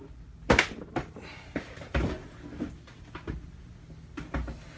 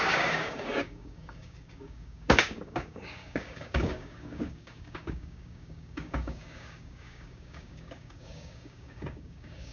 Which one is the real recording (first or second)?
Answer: first